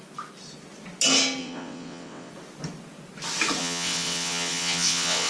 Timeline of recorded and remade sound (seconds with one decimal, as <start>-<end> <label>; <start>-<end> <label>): 0.0-1.4 recorded; 1.4-2.3 remade; 2.3-3.6 recorded; 3.6-5.3 remade